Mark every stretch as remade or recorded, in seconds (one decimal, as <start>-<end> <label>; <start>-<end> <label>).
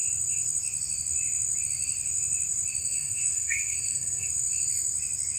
0.0-2.8 recorded; 2.8-4.3 remade; 4.3-5.4 recorded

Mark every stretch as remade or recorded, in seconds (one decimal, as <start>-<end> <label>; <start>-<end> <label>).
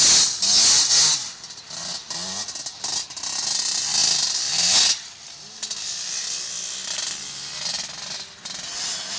0.0-9.2 recorded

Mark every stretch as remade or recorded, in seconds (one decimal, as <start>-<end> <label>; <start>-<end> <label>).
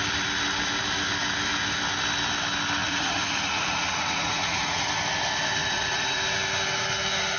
0.0-2.8 recorded; 2.8-4.9 remade; 4.9-5.6 recorded; 5.6-6.2 remade; 6.2-7.4 recorded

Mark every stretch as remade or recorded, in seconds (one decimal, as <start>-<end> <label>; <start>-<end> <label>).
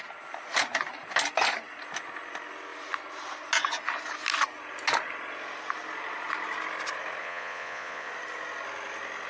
0.0-7.2 recorded; 7.2-8.1 remade; 8.1-9.3 recorded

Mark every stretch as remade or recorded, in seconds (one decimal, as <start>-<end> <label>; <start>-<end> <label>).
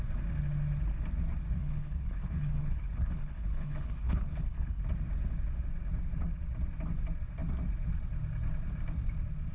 0.0-1.6 recorded; 1.6-4.8 remade; 4.8-9.5 recorded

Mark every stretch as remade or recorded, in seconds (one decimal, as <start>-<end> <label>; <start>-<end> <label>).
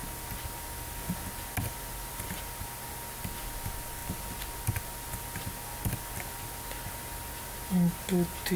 0.0-8.6 recorded